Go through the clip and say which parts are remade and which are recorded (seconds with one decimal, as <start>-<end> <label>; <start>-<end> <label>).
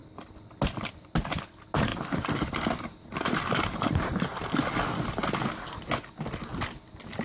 0.0-1.9 recorded; 1.9-4.5 remade; 4.5-7.2 recorded